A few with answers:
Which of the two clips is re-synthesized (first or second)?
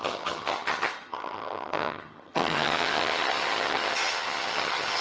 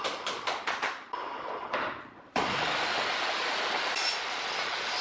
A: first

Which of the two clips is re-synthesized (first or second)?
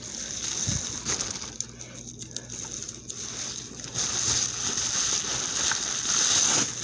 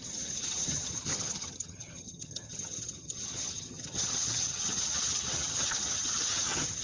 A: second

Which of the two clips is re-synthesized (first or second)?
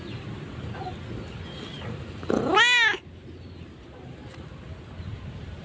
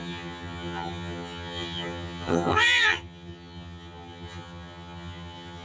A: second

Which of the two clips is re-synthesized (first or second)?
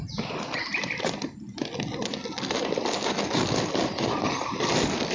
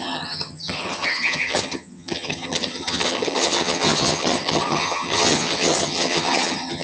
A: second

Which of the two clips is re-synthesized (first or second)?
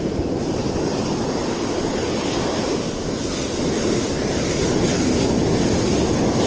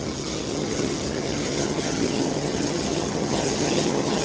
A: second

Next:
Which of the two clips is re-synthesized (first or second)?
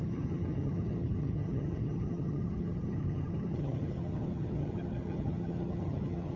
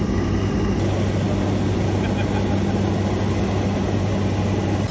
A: first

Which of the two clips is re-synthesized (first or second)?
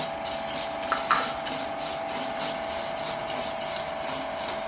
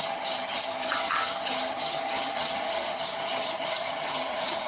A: second